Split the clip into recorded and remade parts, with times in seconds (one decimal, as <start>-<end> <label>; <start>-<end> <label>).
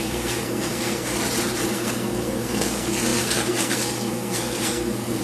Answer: 0.0-1.1 remade; 1.1-1.7 recorded; 1.7-5.2 remade